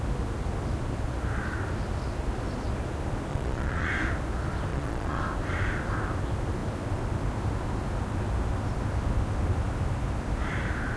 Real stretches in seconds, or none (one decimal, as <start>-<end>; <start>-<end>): 0.0-3.3; 3.9-4.7; 5.2-11.0